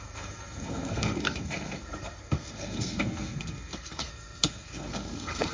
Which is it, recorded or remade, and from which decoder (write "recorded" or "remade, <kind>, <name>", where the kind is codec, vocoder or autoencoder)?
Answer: remade, codec, SNAC